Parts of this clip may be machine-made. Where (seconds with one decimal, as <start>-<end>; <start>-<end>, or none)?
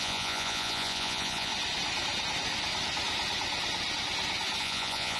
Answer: 0.0-1.5; 4.6-5.2